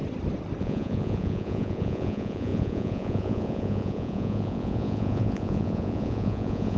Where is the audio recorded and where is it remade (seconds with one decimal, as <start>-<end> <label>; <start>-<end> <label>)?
0.0-0.6 recorded; 0.6-6.8 remade